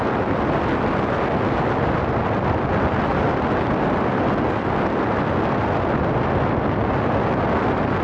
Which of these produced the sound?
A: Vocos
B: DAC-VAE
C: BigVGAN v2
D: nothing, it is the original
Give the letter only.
D